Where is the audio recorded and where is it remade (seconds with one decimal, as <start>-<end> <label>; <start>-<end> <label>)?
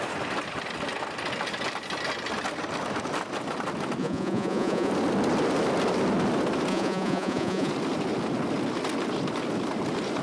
0.0-4.0 recorded; 4.0-4.9 remade; 4.9-6.7 recorded; 6.7-7.7 remade; 7.7-10.2 recorded